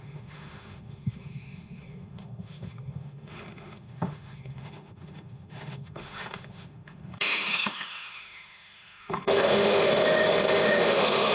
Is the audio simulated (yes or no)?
yes